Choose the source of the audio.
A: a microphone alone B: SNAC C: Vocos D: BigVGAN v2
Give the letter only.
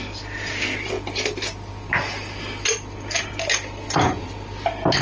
A